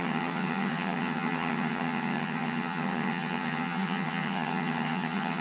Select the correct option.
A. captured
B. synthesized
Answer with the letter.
B